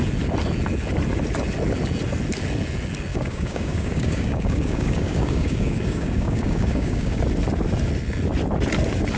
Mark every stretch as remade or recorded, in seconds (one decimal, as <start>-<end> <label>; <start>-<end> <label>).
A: 0.0-3.1 recorded; 3.1-7.2 remade; 7.2-9.2 recorded